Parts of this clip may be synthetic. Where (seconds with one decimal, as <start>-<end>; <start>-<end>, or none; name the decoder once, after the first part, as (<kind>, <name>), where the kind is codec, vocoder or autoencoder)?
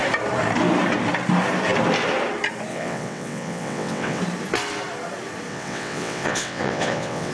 2.7-4.2 (vocoder, WaveNeXt); 5.5-7.3